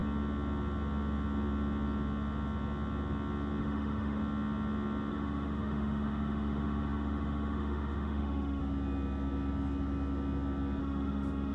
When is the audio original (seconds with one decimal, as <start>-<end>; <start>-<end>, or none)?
0.0-3.6; 4.2-5.1; 8.6-10.8

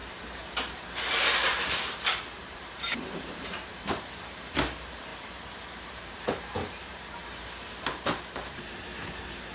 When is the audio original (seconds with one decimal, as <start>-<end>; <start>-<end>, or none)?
5.1-5.9; 7.2-7.9

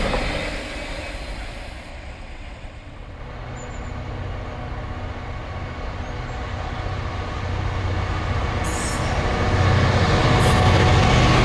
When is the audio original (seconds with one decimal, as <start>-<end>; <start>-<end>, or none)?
0.0-1.9; 3.2-11.4

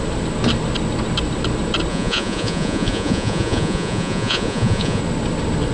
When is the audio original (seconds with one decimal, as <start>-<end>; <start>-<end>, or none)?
0.0-1.9; 5.0-5.7

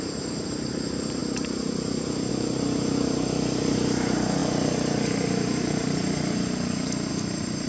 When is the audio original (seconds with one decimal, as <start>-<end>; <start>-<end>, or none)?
none

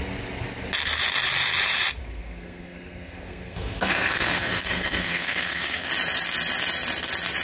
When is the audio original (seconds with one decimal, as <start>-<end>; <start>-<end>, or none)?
0.0-2.0; 5.9-7.4

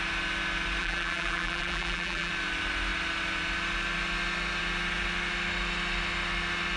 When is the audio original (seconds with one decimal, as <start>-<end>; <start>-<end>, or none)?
0.0-0.8; 2.3-6.8

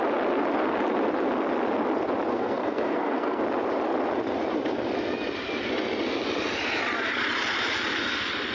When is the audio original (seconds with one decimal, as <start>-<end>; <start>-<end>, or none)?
0.0-2.3; 3.4-8.5